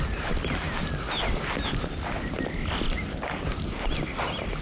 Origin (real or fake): real